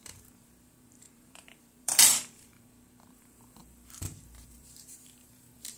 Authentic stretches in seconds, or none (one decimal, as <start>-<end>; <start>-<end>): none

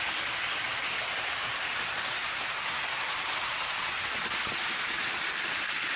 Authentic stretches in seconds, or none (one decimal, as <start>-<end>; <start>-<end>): 0.0-6.0

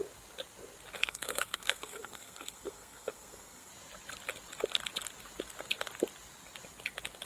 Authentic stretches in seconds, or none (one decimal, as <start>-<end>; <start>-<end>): 0.0-1.0; 3.7-7.3

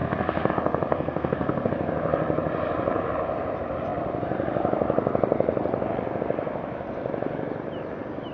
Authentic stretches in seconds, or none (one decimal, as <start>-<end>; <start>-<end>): 0.5-0.9; 1.7-8.3